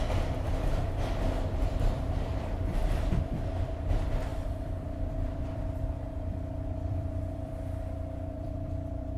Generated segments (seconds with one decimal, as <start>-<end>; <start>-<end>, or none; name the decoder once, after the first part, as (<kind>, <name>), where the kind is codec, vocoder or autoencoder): 0.0-9.2 (vocoder, BigVGAN v2)